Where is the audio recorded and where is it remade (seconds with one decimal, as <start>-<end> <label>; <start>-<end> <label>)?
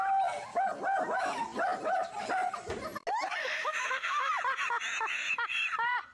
0.0-3.4 recorded; 3.4-4.3 remade; 4.3-6.1 recorded